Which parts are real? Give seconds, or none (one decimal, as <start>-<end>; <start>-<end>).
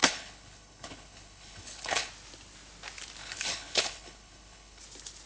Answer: 2.1-3.2; 4.8-5.3